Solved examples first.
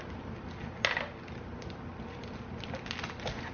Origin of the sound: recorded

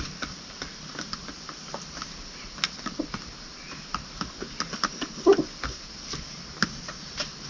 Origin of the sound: recorded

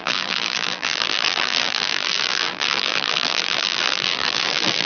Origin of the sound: remade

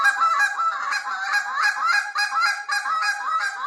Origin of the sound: remade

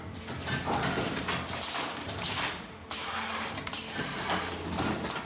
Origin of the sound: recorded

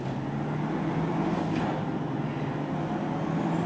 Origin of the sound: recorded